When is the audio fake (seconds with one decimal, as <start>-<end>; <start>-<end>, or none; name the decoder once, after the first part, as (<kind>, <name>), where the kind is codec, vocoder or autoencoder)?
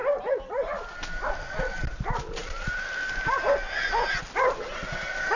none